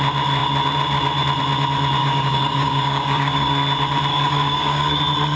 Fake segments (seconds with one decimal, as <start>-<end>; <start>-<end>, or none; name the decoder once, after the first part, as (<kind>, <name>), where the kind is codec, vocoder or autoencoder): 2.0-3.5 (codec, DAC); 4.1-5.0